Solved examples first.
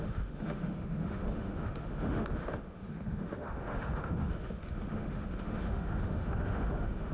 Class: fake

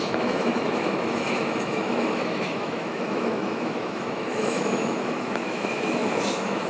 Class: fake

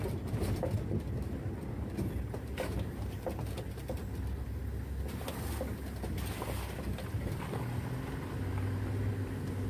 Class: real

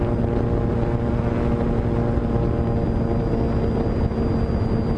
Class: real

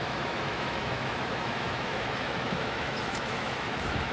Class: fake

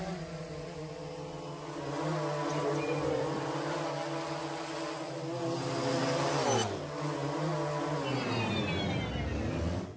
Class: real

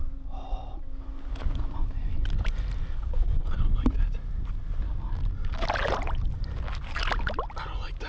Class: real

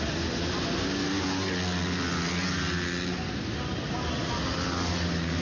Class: real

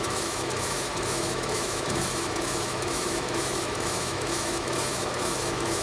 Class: fake